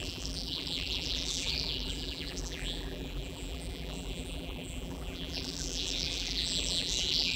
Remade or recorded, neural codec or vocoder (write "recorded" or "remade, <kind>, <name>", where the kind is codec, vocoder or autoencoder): remade, vocoder, BigVGAN v2